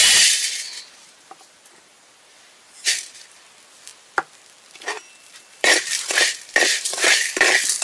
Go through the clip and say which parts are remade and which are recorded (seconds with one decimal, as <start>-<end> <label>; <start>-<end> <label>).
0.0-3.9 remade; 3.9-5.2 recorded; 5.2-7.8 remade